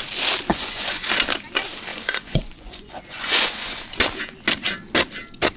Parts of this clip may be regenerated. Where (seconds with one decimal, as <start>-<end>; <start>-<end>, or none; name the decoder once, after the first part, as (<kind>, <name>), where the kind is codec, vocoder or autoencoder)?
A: 0.5-1.1 (vocoder, Vocos); 1.9-3.8